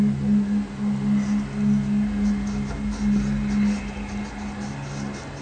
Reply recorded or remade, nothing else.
recorded